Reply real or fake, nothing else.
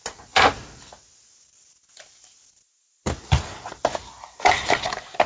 real